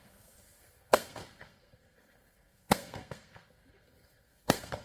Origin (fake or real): fake